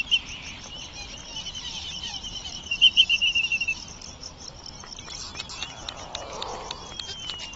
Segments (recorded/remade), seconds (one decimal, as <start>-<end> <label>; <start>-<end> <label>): 0.0-1.3 recorded; 1.3-2.8 remade; 2.8-7.6 recorded